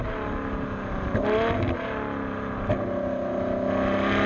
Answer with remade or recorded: recorded